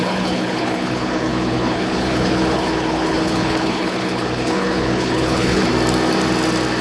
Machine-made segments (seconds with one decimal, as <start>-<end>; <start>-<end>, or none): 0.0-5.7